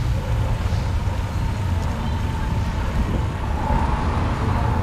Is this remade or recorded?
recorded